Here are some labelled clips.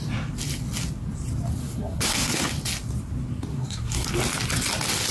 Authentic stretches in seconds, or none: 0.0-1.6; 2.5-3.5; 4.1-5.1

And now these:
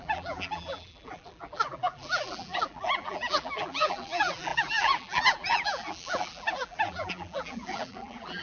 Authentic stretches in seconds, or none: none